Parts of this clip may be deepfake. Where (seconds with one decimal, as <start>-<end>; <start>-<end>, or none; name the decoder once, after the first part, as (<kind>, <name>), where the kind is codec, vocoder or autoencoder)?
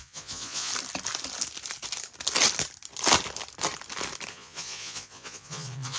0.0-0.7 (vocoder, Vocos); 4.3-6.0